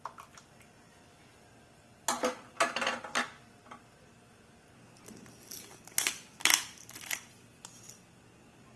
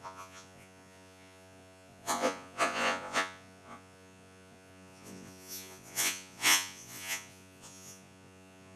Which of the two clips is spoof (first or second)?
second